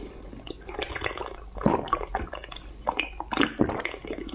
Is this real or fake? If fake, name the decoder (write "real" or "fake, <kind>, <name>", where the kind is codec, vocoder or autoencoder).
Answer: real